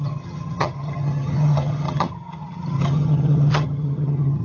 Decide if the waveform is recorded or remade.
remade